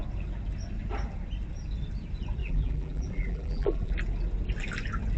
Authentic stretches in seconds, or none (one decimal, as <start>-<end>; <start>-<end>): 0.0-2.4; 3.9-5.2